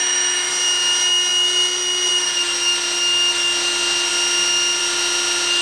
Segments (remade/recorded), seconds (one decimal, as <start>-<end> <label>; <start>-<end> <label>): 0.0-0.5 remade; 0.5-5.6 recorded